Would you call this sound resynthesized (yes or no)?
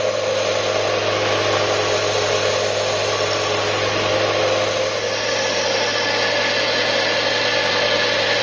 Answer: no